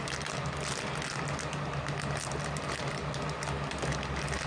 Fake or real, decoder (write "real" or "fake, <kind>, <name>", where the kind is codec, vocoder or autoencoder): real